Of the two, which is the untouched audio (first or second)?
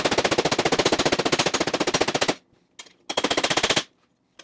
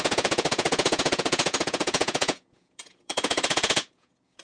first